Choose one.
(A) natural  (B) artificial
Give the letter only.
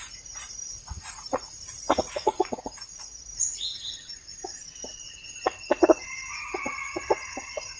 B